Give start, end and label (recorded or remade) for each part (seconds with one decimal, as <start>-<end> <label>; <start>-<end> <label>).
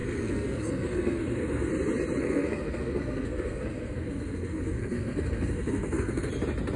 0.0-1.7 remade; 1.7-2.2 recorded; 2.2-6.3 remade; 6.3-6.8 recorded